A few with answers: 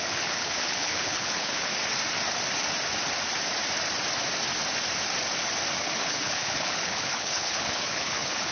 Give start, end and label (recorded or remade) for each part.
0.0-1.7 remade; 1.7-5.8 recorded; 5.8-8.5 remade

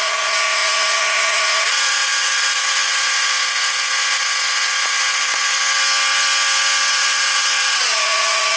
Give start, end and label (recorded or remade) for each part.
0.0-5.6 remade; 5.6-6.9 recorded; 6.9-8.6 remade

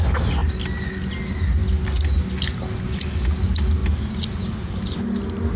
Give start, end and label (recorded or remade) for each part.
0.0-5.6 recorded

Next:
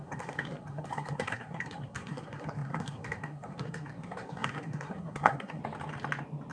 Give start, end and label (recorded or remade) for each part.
0.0-5.6 remade; 5.6-6.5 recorded